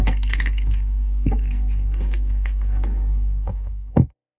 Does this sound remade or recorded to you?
remade